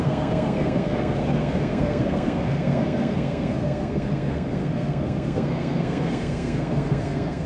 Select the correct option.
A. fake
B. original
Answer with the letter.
A